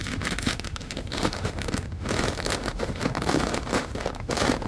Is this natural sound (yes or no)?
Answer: no